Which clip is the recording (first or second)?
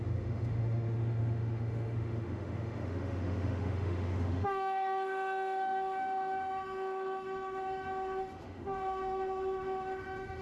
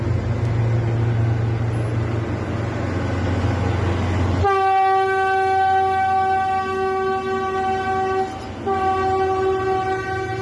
second